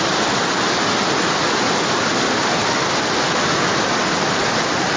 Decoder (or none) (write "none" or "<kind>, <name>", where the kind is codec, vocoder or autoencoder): none